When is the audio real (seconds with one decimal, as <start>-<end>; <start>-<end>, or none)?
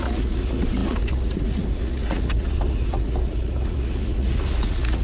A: none